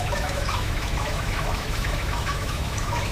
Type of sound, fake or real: fake